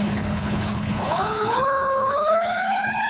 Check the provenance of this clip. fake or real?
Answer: fake